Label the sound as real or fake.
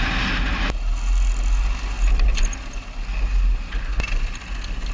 real